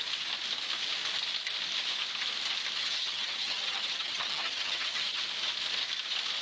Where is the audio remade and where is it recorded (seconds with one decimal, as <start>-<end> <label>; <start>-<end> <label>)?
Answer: 0.0-2.8 recorded; 2.8-5.2 remade; 5.2-6.4 recorded